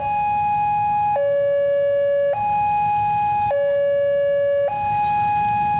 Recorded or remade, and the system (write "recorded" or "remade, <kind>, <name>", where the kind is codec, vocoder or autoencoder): recorded